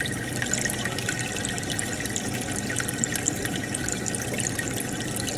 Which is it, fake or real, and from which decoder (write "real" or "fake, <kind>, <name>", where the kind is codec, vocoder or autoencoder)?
real